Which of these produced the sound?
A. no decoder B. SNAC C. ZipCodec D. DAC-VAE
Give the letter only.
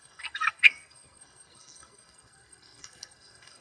B